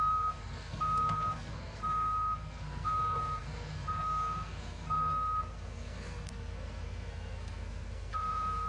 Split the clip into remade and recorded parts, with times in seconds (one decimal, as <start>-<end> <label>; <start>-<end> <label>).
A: 0.0-8.7 remade